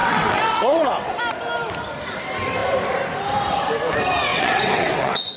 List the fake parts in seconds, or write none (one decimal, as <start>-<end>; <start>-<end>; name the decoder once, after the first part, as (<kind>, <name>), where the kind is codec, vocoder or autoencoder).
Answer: 0.0-1.2 (vocoder, WaveNeXt); 4.3-5.4